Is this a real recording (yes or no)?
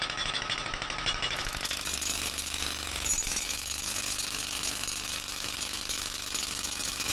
no